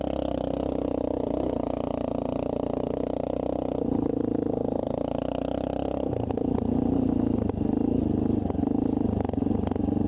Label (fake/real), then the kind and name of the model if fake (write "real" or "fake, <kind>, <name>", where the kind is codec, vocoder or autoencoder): real